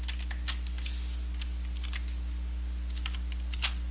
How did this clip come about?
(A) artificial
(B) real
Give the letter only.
B